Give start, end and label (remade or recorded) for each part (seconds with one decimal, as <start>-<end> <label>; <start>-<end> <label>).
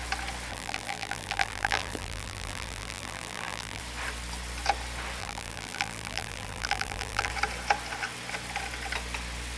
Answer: 0.0-0.5 recorded; 0.5-3.8 remade; 3.8-5.2 recorded; 5.2-7.3 remade; 7.3-9.6 recorded